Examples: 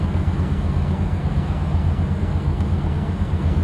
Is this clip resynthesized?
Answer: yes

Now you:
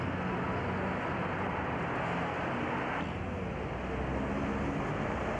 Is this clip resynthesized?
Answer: no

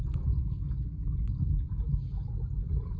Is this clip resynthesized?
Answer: no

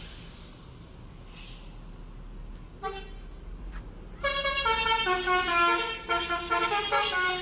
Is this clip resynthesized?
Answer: no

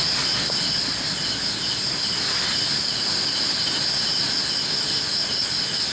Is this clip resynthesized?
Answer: no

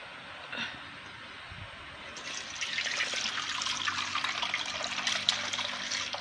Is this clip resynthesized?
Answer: no